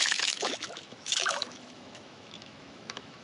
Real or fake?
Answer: fake